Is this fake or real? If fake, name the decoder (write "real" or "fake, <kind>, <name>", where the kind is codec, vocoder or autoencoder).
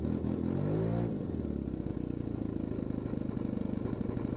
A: real